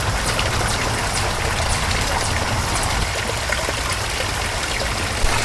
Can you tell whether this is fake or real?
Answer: real